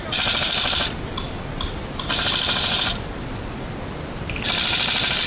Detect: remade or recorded recorded